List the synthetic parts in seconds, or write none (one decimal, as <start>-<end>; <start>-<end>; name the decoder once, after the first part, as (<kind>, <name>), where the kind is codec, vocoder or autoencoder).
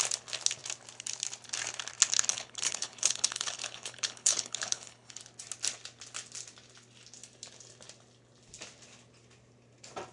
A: 2.3-5.2 (codec, HILCodec)